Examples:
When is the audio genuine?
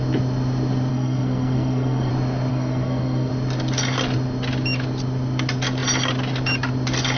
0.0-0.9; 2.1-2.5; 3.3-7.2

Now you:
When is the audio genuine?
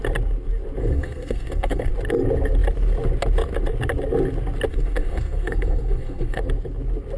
0.0-0.8; 1.9-4.7; 6.4-7.2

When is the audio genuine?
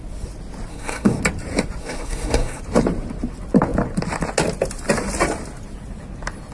0.0-0.7; 1.2-1.8; 2.6-6.5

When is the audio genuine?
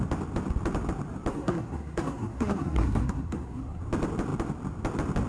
0.0-1.3; 3.8-5.3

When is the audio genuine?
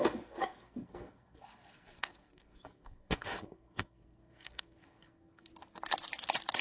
5.5-6.6